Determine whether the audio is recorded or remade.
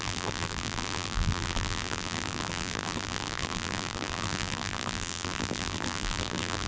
remade